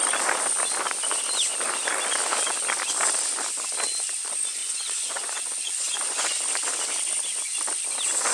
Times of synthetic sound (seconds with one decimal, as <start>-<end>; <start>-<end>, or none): 4.6-6.4